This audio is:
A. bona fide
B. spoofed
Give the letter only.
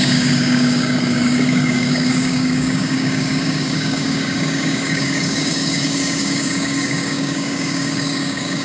B